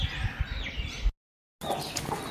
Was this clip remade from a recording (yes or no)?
no